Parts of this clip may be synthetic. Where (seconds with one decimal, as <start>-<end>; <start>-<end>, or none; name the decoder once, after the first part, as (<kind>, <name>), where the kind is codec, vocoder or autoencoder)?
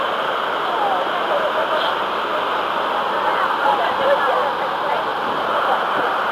5.1-5.7 (vocoder, BigVGAN v2)